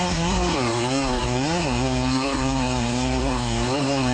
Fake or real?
fake